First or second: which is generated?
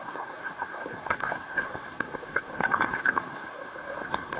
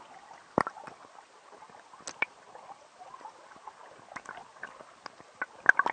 first